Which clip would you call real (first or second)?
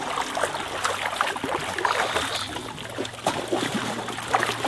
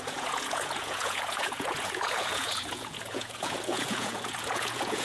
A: first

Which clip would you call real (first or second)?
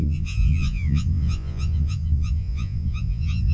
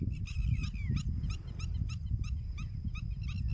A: second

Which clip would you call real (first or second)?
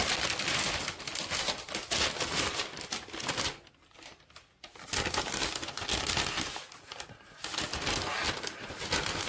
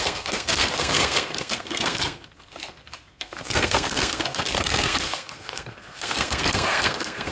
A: first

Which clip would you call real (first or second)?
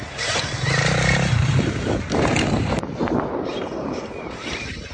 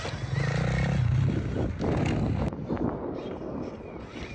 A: second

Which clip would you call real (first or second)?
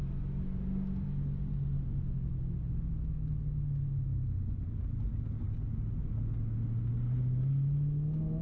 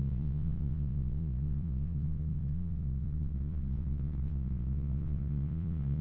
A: first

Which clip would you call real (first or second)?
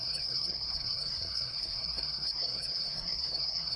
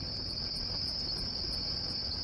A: second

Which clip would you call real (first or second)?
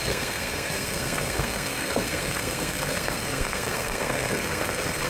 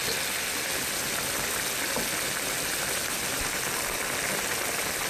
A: second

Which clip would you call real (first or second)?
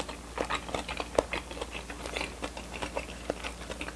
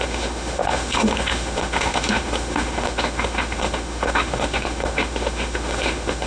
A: first